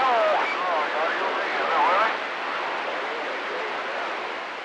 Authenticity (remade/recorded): recorded